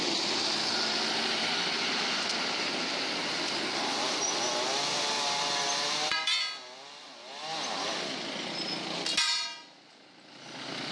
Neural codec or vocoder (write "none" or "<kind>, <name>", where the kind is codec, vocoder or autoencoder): none